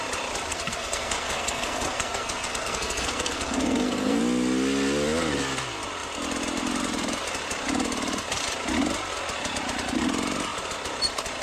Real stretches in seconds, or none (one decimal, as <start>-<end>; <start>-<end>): 0.0-0.5; 4.2-11.4